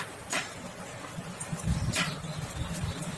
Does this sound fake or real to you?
real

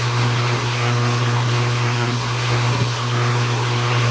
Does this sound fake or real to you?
fake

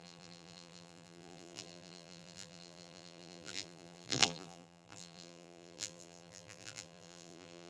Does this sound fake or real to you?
fake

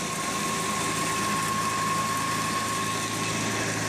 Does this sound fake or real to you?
real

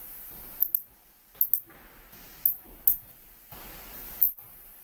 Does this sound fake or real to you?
real